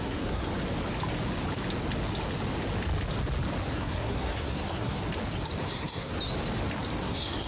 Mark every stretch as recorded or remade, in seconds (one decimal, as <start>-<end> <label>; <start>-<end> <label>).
0.0-0.5 remade; 0.5-3.7 recorded; 3.7-5.0 remade; 5.0-5.6 recorded; 5.6-6.1 remade; 6.1-7.0 recorded; 7.0-7.5 remade